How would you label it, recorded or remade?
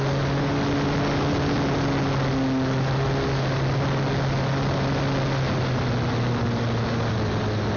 recorded